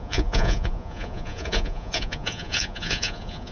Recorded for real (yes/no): no